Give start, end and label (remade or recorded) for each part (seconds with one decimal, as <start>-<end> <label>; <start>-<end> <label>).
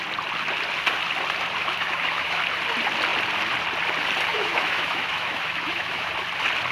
0.0-1.6 recorded; 1.6-2.4 remade; 2.4-4.3 recorded; 4.3-6.1 remade; 6.1-6.7 recorded